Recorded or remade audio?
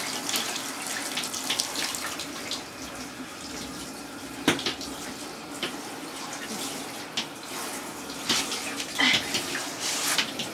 recorded